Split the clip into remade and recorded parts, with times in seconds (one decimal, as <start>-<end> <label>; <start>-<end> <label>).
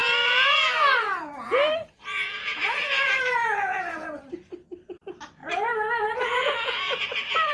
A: 0.0-4.2 remade; 4.2-5.4 recorded; 5.4-7.0 remade; 7.0-7.5 recorded